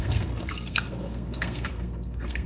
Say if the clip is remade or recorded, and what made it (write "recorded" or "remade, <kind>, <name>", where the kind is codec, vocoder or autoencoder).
remade, codec, SNAC